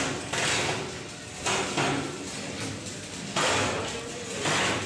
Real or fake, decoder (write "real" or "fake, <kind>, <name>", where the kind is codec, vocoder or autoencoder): real